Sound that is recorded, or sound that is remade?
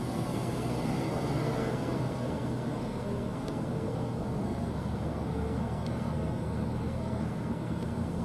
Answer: remade